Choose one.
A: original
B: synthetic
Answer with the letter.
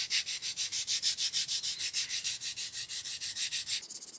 A